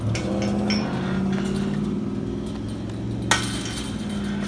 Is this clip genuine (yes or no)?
yes